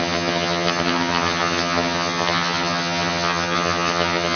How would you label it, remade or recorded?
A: remade